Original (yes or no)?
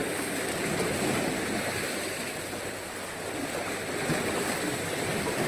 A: yes